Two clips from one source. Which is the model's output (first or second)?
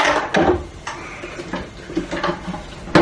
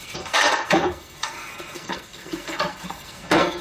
second